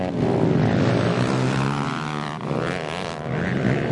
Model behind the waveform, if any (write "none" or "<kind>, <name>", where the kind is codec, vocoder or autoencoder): none